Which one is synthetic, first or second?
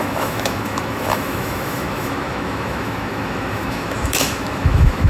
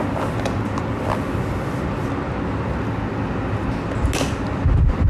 first